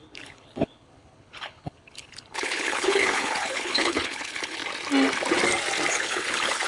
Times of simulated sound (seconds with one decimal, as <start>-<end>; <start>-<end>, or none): 0.0-4.6; 5.9-6.7